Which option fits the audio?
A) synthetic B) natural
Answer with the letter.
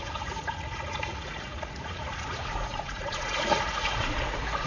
A